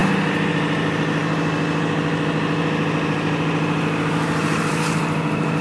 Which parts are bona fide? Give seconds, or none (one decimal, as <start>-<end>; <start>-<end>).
0.0-5.6